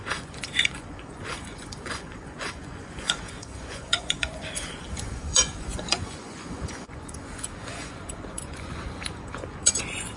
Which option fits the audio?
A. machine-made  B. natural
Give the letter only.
A